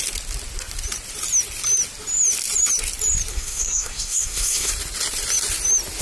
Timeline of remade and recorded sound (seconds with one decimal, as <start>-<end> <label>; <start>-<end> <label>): 0.0-3.3 recorded; 3.3-4.7 remade; 4.7-6.0 recorded